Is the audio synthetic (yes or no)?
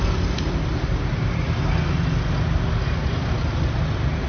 no